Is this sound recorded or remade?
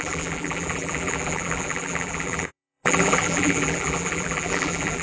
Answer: remade